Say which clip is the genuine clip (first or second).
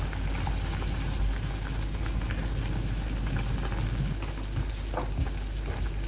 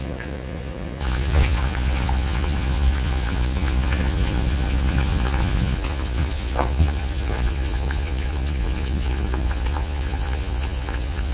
first